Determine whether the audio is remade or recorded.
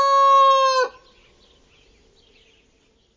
recorded